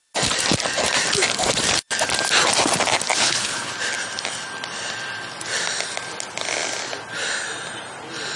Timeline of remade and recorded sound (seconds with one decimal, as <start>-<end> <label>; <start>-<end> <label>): 0.0-3.2 recorded; 3.2-3.7 remade; 3.7-8.4 recorded